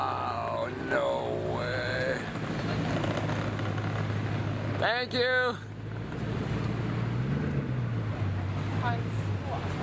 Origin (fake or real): real